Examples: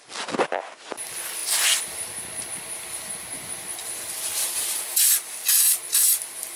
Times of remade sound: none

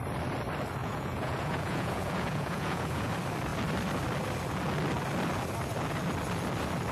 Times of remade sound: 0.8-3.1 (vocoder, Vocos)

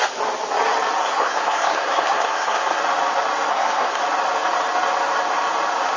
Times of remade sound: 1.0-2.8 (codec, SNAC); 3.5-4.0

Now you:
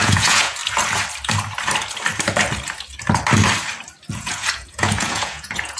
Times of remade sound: 0.0-0.6 (vocoder, Vocos); 4.1-5.8